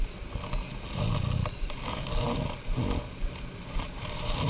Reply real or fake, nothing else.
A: real